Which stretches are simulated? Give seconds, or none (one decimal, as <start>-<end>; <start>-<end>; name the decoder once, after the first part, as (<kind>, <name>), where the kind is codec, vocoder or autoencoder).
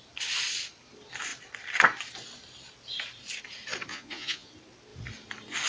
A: 3.9-4.5 (vocoder, Vocos)